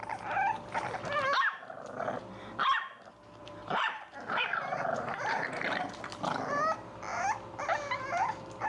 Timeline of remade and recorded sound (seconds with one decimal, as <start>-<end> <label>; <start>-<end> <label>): 0.0-3.4 recorded; 3.4-5.9 remade; 5.9-8.7 recorded